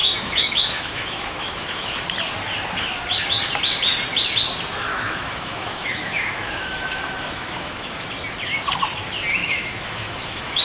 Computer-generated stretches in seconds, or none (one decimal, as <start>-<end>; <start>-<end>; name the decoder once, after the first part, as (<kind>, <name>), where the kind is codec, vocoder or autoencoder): 0.0-2.0 (autoencoder, DAC-VAE); 4.9-8.1; 9.4-10.6